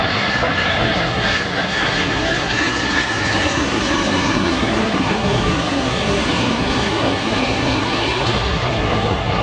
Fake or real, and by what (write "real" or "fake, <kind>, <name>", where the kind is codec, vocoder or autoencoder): fake, codec, SNAC